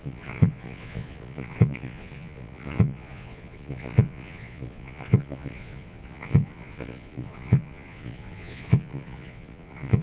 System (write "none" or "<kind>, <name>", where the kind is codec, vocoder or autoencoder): vocoder, Vocos